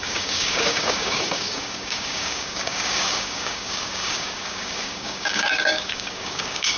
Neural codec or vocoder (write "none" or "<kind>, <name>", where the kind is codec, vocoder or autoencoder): codec, DAC